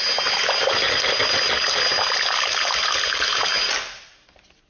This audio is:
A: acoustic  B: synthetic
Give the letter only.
A